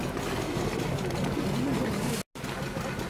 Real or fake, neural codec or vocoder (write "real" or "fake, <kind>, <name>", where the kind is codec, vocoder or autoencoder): real